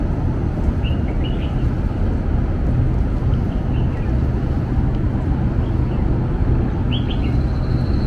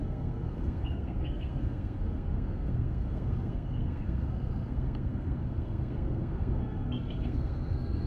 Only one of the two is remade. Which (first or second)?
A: second